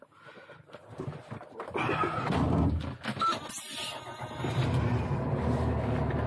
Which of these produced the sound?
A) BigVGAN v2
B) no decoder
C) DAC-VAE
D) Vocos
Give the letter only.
B